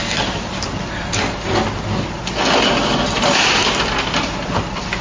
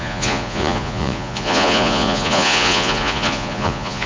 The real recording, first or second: first